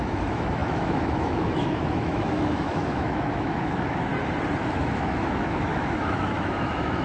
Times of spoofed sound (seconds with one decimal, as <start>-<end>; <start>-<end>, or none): 0.0-4.1; 4.6-7.0

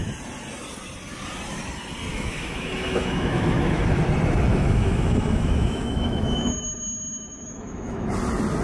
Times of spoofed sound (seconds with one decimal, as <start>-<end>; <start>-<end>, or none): 2.1-4.0; 4.5-8.1

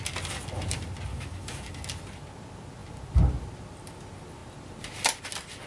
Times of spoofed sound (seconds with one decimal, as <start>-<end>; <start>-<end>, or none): 1.1-1.8

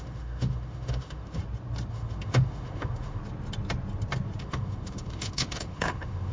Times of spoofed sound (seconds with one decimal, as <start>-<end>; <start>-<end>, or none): 0.0-1.4; 1.9-3.2; 4.4-6.3